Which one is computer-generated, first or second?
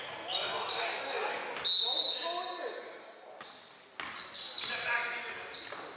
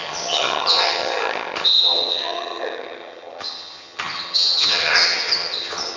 second